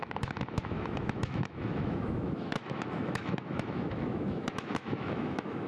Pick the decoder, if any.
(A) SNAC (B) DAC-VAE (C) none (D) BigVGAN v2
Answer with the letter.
B